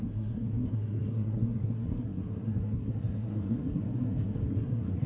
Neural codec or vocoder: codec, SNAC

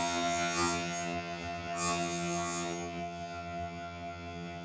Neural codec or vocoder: vocoder, HiFi-GAN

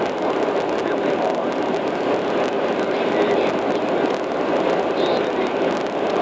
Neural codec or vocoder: none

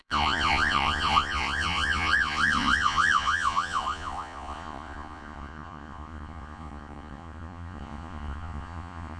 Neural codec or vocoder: vocoder, Vocos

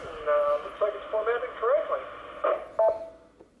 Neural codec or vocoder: none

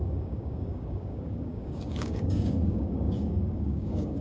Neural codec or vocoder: codec, DAC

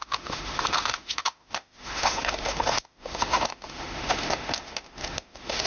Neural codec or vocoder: autoencoder, DAC-VAE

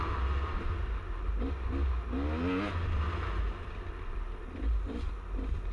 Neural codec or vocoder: none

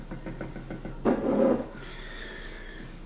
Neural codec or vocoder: codec, DAC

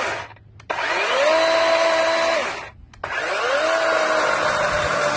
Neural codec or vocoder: none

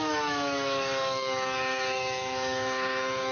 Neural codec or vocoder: autoencoder, DAC-VAE